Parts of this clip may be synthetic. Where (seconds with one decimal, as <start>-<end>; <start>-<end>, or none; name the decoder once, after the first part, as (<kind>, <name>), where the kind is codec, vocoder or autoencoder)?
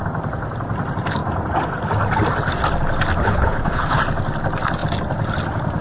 3.2-4.0 (codec, HILCodec)